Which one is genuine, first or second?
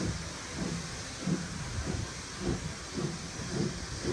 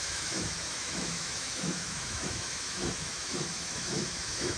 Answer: first